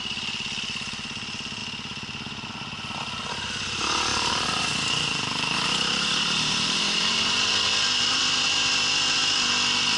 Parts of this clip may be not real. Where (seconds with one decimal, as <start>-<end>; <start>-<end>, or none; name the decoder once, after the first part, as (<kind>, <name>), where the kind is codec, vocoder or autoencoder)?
4.1-8.2 (vocoder, BigVGAN v2)